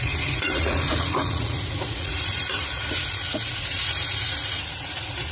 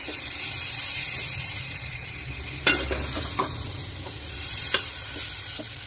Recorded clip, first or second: second